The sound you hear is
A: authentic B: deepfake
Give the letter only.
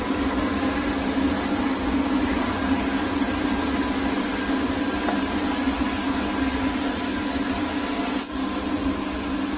A